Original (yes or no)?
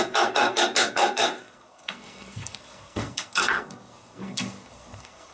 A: no